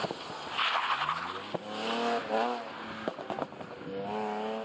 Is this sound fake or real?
real